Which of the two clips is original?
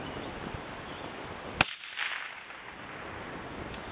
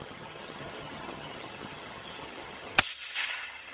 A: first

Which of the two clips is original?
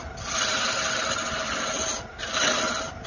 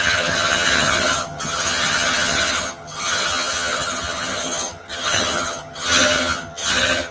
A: first